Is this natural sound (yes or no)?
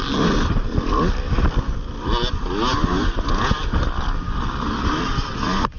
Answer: yes